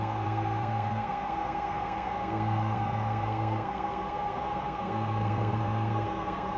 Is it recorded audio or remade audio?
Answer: remade